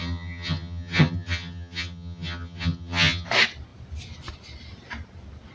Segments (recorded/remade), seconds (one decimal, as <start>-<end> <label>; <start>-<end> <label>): 0.0-3.3 remade; 3.3-5.5 recorded